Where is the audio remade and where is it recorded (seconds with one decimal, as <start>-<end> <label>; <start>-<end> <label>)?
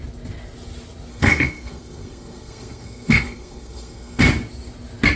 0.0-1.1 recorded; 1.1-4.2 remade; 4.2-5.2 recorded